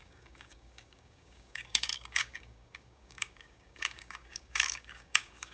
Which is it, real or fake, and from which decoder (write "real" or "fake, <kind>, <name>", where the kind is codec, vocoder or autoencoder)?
fake, codec, DAC